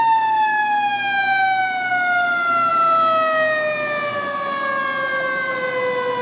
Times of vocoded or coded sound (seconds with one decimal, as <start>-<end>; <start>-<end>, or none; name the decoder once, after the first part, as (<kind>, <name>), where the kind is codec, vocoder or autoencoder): none